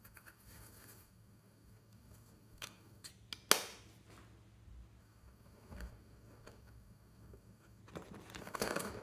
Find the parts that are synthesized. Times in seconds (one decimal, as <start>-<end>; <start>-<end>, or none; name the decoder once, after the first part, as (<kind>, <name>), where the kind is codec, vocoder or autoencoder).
0.0-3.1 (codec, DAC); 5.0-7.8; 8.4-9.0